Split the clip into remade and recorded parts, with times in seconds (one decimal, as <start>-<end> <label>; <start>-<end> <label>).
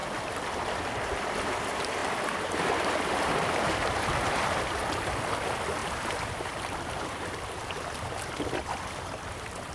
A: 0.0-1.1 recorded; 1.1-9.7 remade